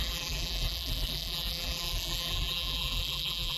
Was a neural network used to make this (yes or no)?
yes